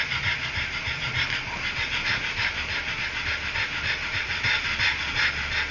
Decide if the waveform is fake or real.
real